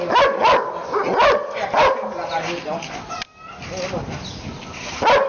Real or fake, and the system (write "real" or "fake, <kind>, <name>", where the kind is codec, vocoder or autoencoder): real